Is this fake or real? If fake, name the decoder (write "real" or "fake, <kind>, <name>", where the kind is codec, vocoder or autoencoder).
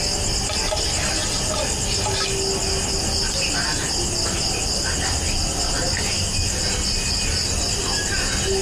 real